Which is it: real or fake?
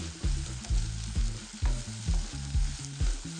real